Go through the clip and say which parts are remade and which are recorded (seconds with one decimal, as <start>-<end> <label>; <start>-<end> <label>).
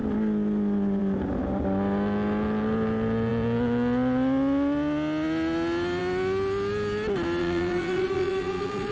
0.0-7.4 recorded; 7.4-8.9 remade